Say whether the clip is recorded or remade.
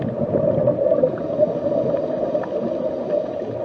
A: recorded